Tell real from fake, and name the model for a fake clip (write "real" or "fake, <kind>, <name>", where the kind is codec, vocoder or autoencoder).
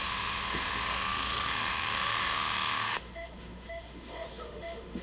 fake, autoencoder, DAC-VAE